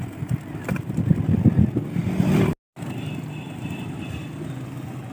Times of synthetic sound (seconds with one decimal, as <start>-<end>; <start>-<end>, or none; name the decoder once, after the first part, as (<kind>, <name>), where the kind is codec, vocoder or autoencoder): none

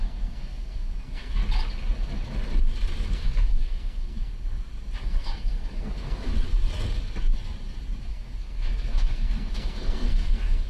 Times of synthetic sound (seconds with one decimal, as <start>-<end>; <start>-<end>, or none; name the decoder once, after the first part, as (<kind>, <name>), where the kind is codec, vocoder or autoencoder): 0.0-1.4 (codec, SNAC); 3.1-4.3; 5.0-6.3; 8.1-10.7

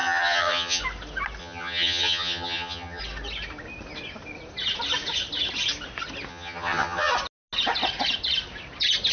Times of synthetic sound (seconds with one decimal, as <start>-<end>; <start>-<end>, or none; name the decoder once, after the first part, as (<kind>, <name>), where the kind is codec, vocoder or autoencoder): 0.0-0.8 (vocoder, HiFi-GAN); 1.4-3.0; 6.3-7.1

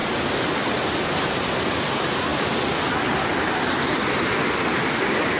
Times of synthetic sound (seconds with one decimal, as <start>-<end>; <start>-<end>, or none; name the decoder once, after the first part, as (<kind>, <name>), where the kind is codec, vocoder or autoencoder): none

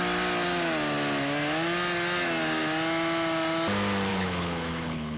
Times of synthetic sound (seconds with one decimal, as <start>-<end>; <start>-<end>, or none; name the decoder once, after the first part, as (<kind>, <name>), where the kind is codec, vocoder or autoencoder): 4.1-5.2 (codec, HILCodec)

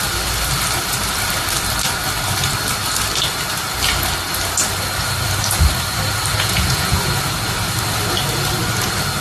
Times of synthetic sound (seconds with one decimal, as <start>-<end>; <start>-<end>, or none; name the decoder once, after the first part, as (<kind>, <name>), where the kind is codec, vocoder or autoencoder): 6.3-7.0 (vocoder, Vocos)

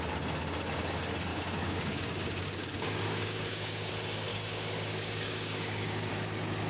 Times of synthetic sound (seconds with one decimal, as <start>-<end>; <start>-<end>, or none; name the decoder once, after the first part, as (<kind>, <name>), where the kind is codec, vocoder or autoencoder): 1.3-3.9 (codec, DAC); 4.3-6.1